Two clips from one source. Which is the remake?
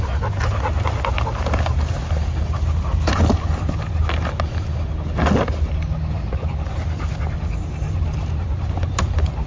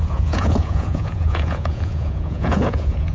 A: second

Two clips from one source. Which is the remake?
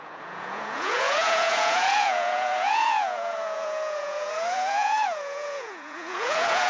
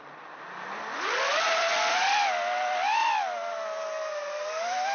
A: first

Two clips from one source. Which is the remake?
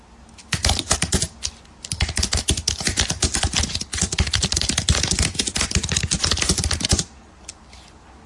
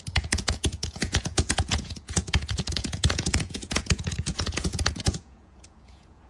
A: second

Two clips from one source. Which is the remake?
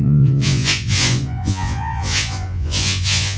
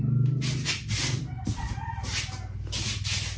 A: first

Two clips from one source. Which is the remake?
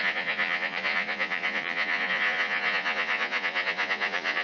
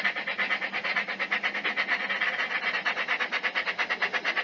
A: first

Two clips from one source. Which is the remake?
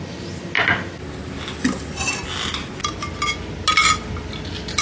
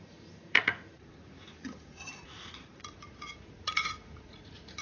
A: second